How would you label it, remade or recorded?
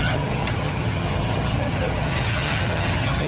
remade